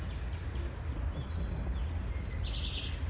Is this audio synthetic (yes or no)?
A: no